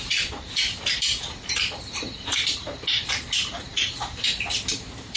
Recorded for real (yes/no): no